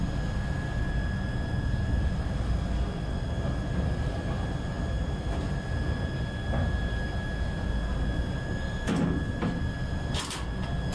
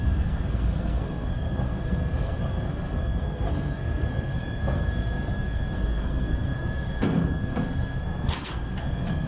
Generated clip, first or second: second